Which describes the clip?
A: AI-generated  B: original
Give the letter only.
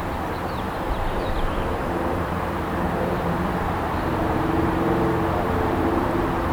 A